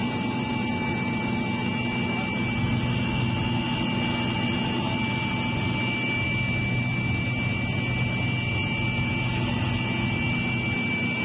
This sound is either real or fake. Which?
real